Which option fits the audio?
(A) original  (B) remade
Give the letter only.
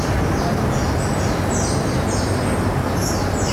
A